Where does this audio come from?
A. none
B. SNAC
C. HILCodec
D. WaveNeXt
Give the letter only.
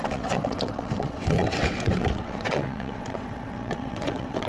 D